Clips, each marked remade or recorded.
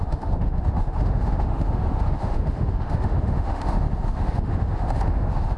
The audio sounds remade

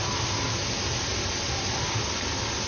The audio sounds recorded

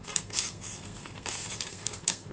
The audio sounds remade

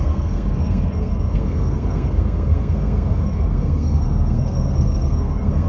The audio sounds remade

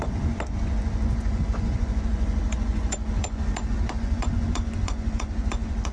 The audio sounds remade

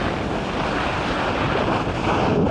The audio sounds recorded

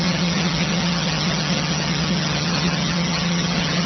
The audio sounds remade